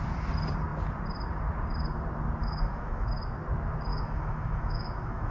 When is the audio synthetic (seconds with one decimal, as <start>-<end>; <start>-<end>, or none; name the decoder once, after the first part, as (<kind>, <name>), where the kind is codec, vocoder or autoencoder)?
2.4-3.1 (autoencoder, DAC-VAE); 3.9-5.3